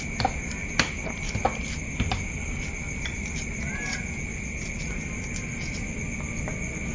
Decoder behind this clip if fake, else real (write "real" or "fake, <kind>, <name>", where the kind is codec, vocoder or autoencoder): real